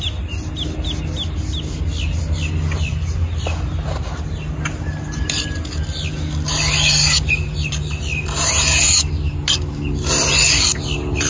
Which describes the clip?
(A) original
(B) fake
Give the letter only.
A